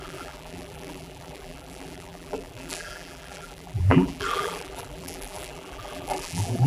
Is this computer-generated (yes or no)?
yes